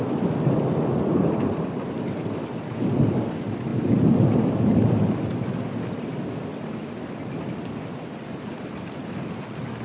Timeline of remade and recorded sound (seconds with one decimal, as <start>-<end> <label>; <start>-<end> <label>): 0.0-3.7 recorded; 3.7-4.9 remade; 4.9-9.8 recorded